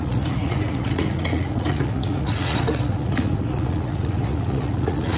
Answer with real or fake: fake